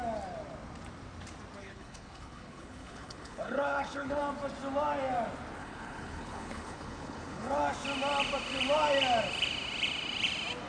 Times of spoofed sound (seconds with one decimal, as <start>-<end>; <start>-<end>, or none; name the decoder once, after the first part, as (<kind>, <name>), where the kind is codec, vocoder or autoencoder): 1.6-4.2 (codec, HILCodec); 5.6-7.6